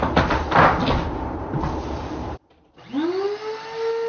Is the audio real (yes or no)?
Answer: yes